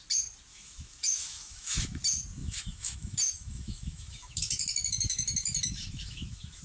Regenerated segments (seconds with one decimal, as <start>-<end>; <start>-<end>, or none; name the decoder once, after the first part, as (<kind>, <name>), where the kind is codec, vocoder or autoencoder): 0.5-2.0 (autoencoder, DAC-VAE); 2.4-6.6